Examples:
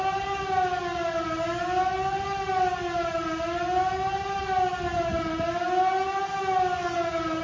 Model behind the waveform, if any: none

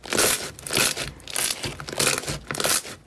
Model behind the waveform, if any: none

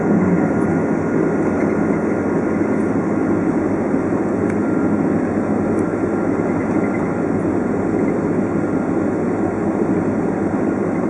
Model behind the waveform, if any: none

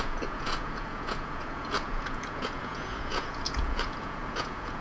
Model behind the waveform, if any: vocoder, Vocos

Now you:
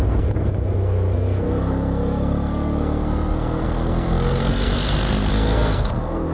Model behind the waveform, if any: codec, SNAC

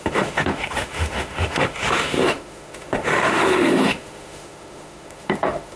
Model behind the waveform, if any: autoencoder, DAC-VAE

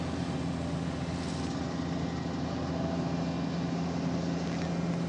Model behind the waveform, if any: none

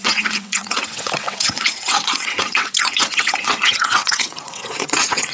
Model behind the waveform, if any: vocoder, WaveNeXt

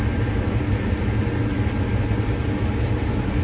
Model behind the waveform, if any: none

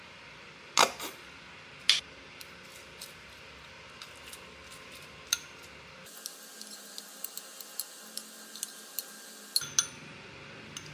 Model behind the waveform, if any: none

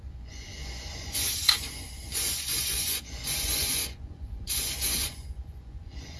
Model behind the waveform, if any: vocoder, Vocos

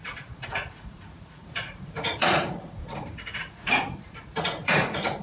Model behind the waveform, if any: vocoder, Vocos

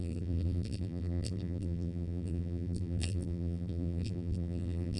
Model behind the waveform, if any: vocoder, BigVGAN v2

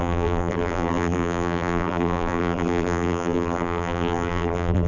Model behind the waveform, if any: vocoder, BigVGAN v2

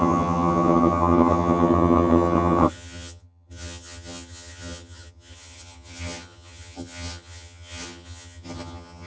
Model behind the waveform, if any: vocoder, HiFi-GAN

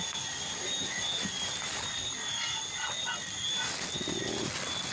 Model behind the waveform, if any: none